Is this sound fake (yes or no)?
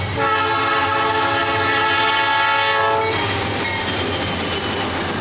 no